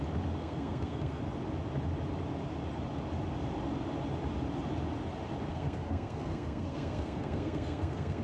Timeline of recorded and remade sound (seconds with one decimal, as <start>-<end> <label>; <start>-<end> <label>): 0.0-0.4 recorded; 0.4-1.2 remade; 1.2-5.5 recorded; 5.5-8.2 remade

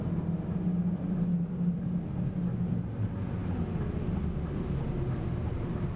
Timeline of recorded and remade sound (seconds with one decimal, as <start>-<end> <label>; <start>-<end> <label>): 0.0-6.0 recorded

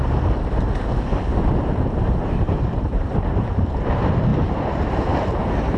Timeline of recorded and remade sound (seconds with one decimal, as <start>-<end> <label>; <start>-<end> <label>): 0.0-1.7 recorded; 1.7-3.9 remade; 3.9-4.3 recorded; 4.3-5.8 remade

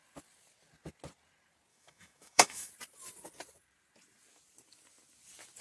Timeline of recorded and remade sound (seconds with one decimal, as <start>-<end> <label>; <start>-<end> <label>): 0.0-1.7 recorded; 1.7-2.7 remade; 2.7-5.6 recorded

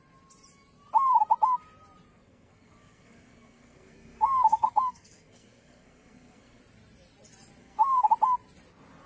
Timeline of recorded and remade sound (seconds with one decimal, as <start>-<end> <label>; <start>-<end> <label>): 0.0-2.1 recorded; 2.1-6.6 remade; 6.6-7.6 recorded; 7.6-8.1 remade; 8.1-9.1 recorded

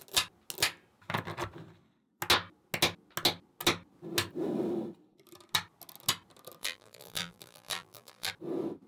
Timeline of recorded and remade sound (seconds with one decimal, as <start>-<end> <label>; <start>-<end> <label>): 0.0-6.6 recorded; 6.6-8.3 remade; 8.3-8.9 recorded

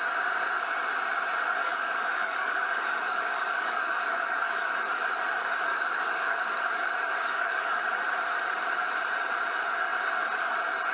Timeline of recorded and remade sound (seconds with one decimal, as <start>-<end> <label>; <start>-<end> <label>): 0.0-1.6 recorded; 1.6-4.7 remade; 4.7-5.7 recorded; 5.7-7.8 remade; 7.8-10.9 recorded